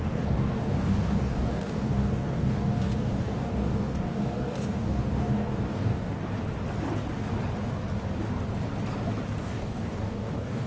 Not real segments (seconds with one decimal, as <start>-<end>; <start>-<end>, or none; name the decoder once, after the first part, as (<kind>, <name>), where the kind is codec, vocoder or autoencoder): 0.0-6.2 (codec, DAC); 9.4-10.7